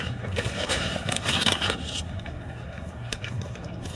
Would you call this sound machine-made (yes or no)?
yes